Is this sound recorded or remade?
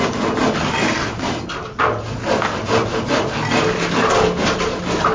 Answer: recorded